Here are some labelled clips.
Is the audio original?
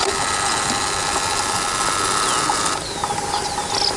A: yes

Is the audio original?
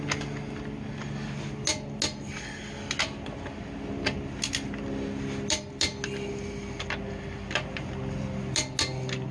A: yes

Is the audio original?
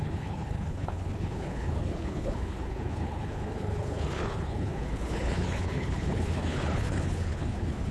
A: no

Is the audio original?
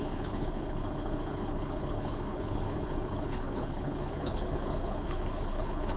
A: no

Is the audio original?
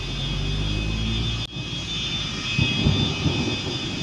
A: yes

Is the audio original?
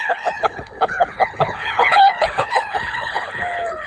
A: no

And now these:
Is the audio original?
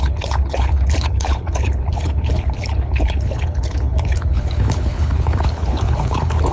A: no